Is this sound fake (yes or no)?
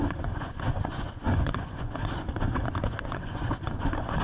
yes